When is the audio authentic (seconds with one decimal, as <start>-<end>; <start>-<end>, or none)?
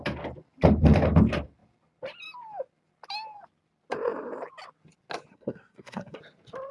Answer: 0.0-5.3; 6.2-6.7